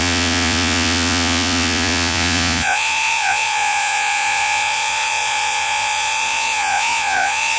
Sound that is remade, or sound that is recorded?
remade